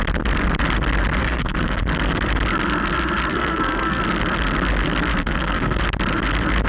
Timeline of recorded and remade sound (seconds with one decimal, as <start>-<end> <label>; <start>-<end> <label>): 0.0-1.2 recorded; 1.2-1.8 remade; 1.8-3.3 recorded; 3.3-4.0 remade; 4.0-5.2 recorded; 5.2-5.8 remade; 5.8-6.7 recorded